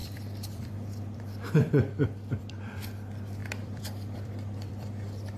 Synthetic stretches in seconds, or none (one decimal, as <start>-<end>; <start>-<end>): 0.0-2.6; 3.4-5.0